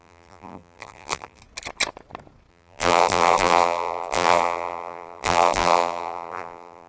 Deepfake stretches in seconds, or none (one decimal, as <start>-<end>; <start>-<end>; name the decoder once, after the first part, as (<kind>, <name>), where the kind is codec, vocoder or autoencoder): 0.0-1.4 (vocoder, BigVGAN v2); 2.5-6.9